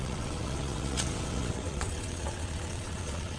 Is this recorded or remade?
remade